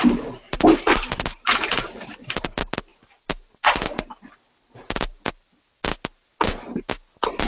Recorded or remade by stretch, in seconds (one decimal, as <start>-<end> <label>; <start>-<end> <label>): 0.0-7.5 recorded